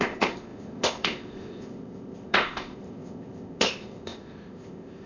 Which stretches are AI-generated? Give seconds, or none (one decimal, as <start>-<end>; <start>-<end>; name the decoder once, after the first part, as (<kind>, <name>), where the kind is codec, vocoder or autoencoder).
0.0-5.1 (codec, ZipCodec)